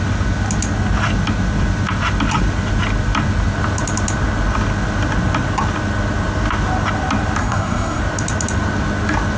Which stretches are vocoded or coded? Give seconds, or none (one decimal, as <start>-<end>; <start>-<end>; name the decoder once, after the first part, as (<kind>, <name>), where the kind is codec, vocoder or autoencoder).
7.4-8.0 (codec, SNAC)